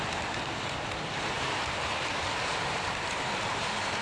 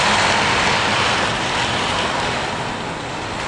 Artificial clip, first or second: first